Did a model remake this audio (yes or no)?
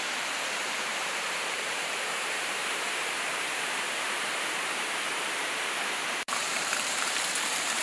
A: yes